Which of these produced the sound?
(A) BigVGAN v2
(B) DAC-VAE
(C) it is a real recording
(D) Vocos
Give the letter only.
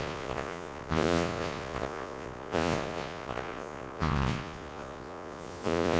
D